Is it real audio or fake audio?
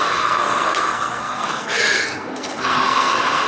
fake